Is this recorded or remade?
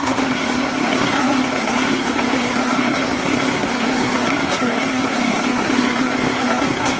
remade